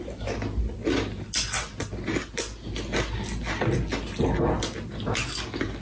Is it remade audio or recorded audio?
recorded